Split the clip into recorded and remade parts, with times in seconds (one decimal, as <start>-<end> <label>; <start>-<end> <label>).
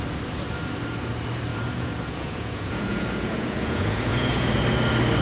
0.0-1.5 recorded; 1.5-4.6 remade; 4.6-5.2 recorded